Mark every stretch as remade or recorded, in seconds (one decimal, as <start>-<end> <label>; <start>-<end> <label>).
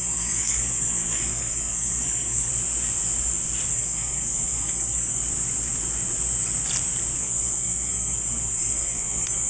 0.0-2.5 remade; 2.5-3.7 recorded; 3.7-5.2 remade; 5.2-7.2 recorded; 7.2-9.5 remade